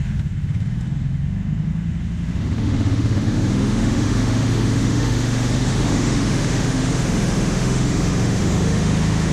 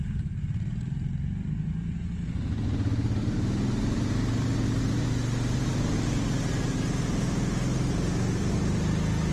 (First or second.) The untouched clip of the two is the second